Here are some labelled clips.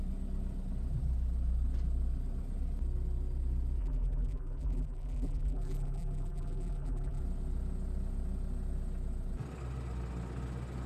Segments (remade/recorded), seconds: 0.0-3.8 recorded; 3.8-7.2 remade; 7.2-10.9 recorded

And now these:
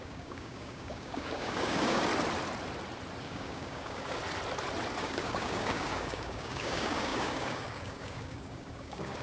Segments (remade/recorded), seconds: 0.0-2.1 remade; 2.1-3.2 recorded; 3.2-4.2 remade; 4.2-5.0 recorded; 5.0-9.2 remade